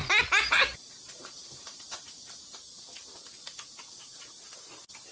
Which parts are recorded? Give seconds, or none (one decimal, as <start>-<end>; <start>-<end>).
3.1-5.1